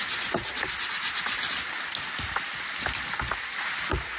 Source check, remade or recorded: recorded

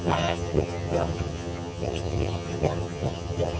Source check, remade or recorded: remade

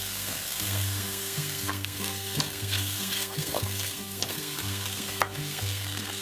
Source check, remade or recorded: remade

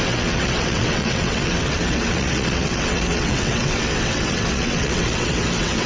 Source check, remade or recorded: remade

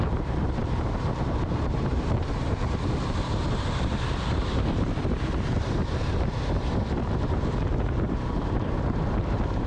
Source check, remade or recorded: remade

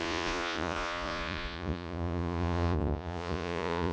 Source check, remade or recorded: remade